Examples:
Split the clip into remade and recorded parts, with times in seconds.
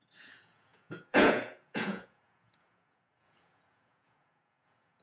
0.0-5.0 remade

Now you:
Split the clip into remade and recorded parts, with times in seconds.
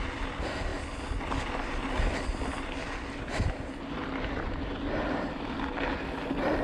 0.0-6.6 recorded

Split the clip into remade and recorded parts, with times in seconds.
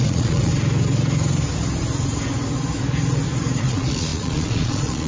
0.0-0.5 remade; 0.5-3.6 recorded; 3.6-5.1 remade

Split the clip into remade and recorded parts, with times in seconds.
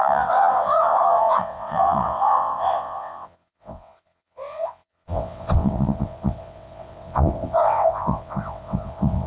0.0-9.3 remade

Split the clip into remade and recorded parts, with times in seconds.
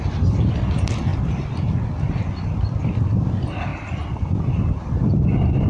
0.0-1.1 recorded; 1.1-2.8 remade; 2.8-3.7 recorded; 3.7-4.8 remade; 4.8-5.7 recorded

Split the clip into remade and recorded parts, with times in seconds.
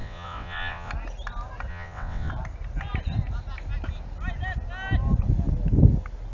0.0-0.9 remade; 0.9-1.7 recorded; 1.7-2.3 remade; 2.3-6.3 recorded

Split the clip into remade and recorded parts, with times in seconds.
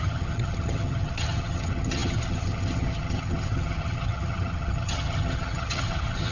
0.0-6.3 remade